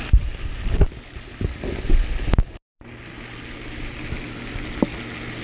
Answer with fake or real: real